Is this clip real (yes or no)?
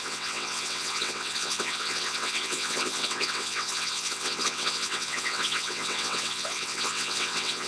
no